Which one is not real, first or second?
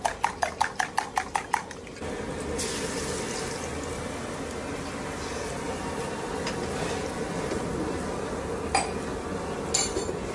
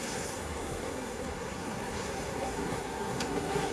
second